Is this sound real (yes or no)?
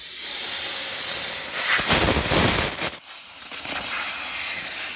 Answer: yes